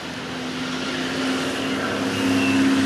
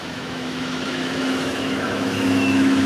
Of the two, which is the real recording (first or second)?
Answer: first